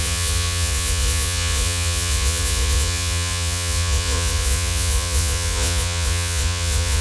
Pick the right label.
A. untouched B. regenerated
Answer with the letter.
B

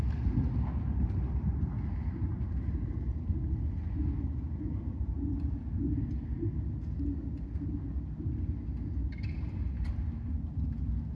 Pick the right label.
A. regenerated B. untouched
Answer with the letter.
B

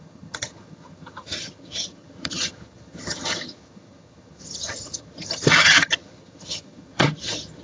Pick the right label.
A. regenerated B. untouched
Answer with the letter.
A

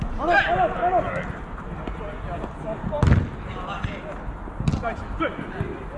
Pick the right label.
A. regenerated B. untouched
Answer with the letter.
B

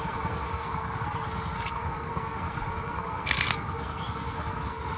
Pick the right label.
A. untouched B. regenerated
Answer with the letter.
B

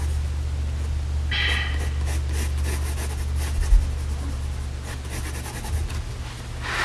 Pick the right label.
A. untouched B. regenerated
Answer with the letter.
A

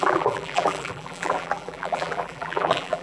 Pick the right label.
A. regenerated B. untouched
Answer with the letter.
A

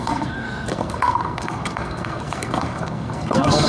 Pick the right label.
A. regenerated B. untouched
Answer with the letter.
A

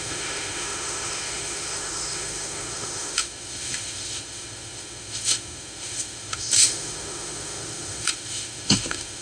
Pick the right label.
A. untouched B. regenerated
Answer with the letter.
B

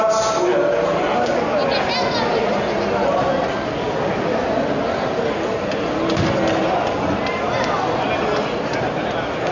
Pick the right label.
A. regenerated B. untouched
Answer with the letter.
B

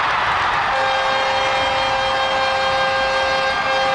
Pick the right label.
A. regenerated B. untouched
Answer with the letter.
B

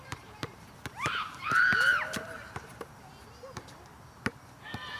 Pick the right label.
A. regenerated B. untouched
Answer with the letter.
A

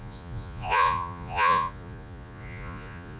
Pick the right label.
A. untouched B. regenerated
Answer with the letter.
B